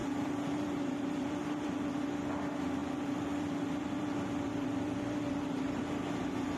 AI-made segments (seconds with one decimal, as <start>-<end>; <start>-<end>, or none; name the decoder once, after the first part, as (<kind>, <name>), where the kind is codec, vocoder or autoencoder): 0.0-2.0 (vocoder, BigVGAN v2); 2.8-5.8